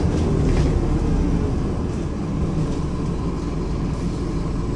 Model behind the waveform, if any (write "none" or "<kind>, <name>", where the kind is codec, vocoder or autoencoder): none